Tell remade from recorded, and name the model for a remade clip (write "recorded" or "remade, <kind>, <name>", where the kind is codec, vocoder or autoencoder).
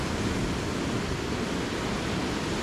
recorded